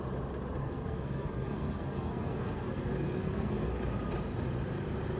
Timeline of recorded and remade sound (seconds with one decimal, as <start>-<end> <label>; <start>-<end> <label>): 0.0-0.6 recorded; 0.6-3.7 remade; 3.7-5.2 recorded